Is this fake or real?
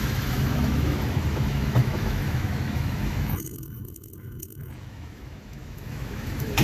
fake